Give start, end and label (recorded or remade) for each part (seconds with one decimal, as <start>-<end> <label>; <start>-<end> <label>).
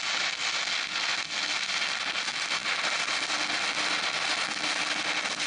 0.0-5.5 recorded